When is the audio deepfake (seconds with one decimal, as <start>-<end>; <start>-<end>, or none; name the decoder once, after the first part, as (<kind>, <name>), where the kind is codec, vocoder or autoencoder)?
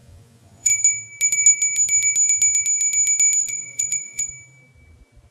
0.0-0.7 (vocoder, Vocos); 3.4-4.3